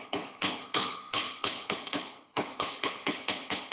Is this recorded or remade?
remade